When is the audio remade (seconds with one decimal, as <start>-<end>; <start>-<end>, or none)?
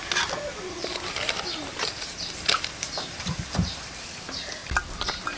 0.8-4.0